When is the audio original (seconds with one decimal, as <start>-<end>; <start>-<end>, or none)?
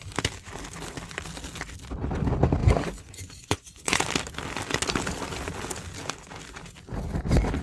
0.0-2.6; 4.0-7.6